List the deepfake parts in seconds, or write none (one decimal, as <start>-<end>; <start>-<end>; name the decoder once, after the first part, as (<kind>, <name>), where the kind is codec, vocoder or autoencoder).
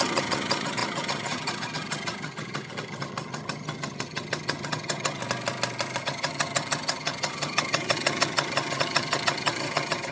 0.0-5.2 (vocoder, HiFi-GAN); 6.0-10.1